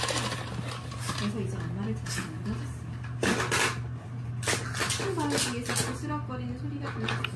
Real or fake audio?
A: real